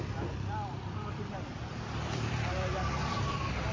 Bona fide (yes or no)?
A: no